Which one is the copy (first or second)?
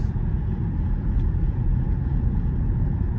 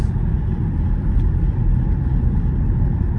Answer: first